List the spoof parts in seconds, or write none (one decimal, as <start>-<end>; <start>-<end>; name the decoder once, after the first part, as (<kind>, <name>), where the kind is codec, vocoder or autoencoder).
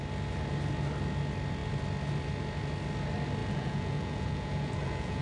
3.4-5.2 (vocoder, Vocos)